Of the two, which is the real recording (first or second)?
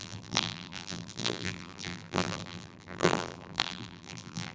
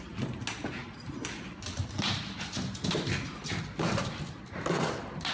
second